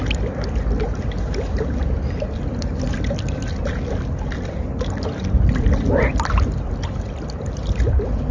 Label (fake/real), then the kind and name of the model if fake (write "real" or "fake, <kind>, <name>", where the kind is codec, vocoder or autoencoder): real